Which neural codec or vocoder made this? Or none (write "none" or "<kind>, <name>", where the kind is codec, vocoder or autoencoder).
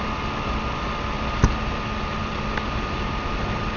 none